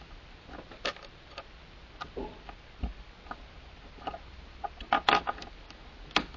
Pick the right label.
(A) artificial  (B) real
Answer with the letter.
B